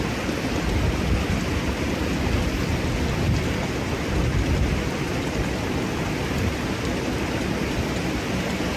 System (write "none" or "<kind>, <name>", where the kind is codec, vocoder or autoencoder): none